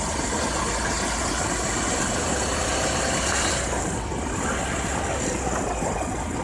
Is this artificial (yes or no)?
no